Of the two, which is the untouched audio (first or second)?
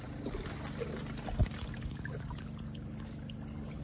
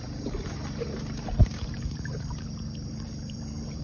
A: first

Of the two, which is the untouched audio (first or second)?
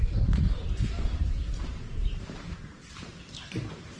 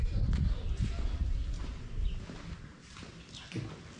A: second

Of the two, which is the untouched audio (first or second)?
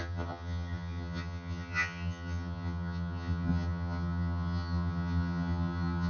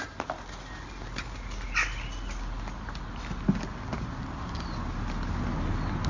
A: second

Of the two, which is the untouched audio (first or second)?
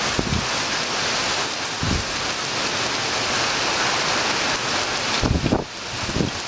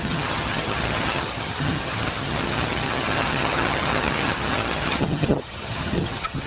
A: first